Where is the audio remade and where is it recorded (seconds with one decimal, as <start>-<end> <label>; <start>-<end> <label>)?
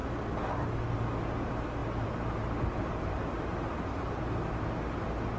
0.0-1.8 recorded; 1.8-4.8 remade; 4.8-5.4 recorded